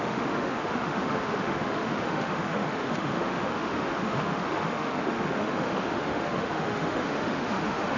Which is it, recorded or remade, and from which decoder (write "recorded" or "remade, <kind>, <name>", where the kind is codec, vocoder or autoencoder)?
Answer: remade, autoencoder, DAC-VAE